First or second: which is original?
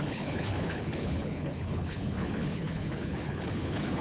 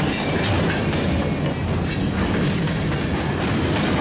second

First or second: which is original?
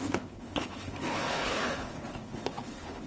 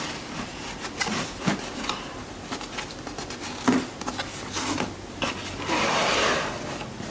second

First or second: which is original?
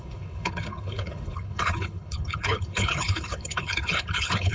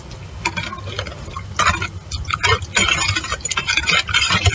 second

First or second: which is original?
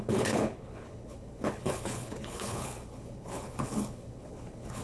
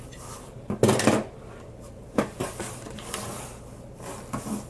second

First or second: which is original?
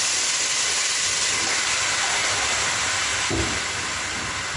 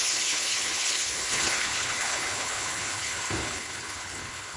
first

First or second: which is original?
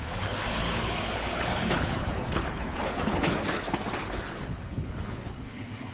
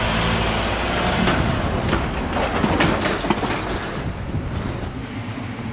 second